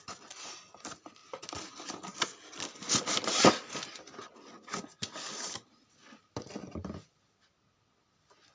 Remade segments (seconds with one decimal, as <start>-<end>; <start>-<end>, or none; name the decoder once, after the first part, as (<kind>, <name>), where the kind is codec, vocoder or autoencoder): none